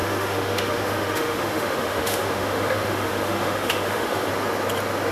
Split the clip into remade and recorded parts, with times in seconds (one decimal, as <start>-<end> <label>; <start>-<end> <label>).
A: 0.0-4.3 remade; 4.3-5.1 recorded